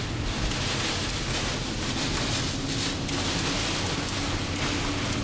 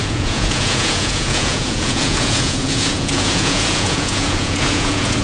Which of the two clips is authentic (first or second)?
first